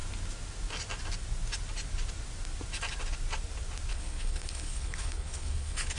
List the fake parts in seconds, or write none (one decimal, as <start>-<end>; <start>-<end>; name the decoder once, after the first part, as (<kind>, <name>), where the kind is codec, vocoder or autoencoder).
3.9-6.0 (codec, HILCodec)